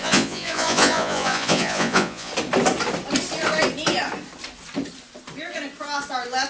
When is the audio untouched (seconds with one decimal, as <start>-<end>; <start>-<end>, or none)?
2.3-6.5